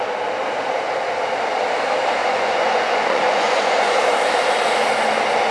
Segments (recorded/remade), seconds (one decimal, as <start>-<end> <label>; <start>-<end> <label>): 0.0-2.2 recorded; 2.2-4.0 remade; 4.0-5.5 recorded